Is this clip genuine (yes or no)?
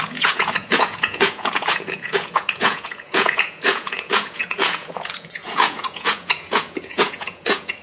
no